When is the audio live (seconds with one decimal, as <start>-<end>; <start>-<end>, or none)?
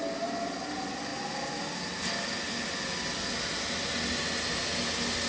0.0-5.3